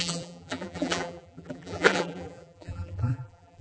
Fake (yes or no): yes